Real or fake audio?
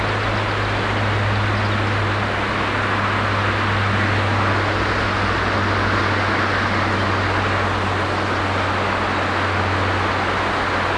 real